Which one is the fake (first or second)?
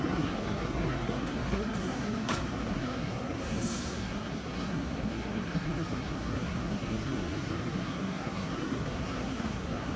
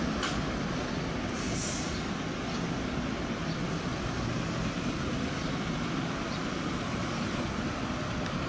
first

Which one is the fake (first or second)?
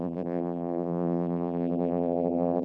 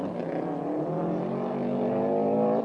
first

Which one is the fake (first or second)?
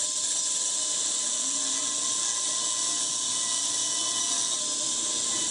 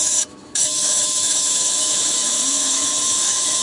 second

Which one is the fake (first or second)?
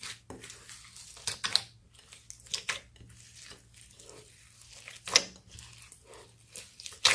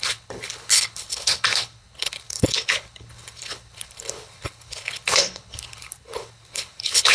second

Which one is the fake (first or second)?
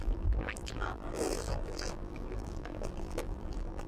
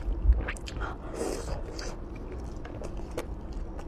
first